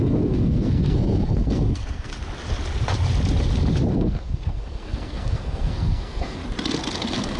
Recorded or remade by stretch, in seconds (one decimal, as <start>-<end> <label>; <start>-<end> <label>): 0.0-2.1 remade; 2.1-3.9 recorded; 3.9-6.4 remade; 6.4-7.0 recorded; 7.0-7.4 remade